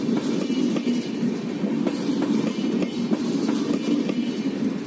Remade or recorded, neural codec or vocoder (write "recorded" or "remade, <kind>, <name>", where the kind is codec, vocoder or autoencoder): recorded